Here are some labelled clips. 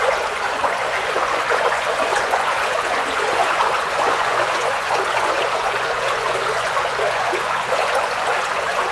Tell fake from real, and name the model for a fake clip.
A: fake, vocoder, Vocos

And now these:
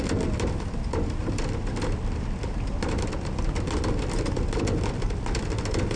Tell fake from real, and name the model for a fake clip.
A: real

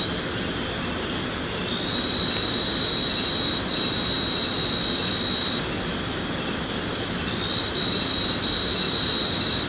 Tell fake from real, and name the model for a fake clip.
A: real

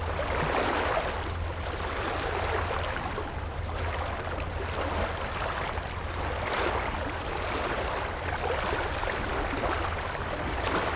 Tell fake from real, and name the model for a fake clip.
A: real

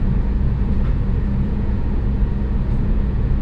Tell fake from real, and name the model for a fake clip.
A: fake, vocoder, Vocos